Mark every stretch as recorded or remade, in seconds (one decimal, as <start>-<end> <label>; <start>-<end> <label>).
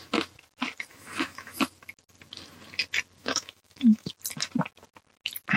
0.0-0.9 recorded; 0.9-1.6 remade; 1.6-3.2 recorded; 3.2-4.1 remade; 4.1-5.6 recorded